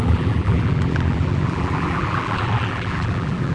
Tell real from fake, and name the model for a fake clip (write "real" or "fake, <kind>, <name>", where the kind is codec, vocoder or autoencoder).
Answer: fake, vocoder, BigVGAN v2